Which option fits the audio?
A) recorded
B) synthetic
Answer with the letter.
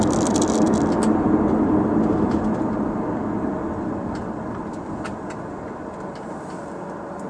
A